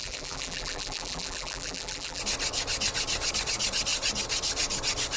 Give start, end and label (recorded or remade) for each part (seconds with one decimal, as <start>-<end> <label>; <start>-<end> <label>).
0.0-2.2 remade; 2.2-5.2 recorded

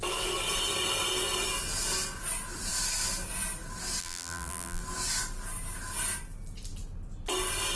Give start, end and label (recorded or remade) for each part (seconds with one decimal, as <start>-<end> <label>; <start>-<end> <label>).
0.0-4.0 recorded; 4.0-4.8 remade; 4.8-7.8 recorded